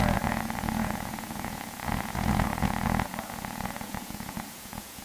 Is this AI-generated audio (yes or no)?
yes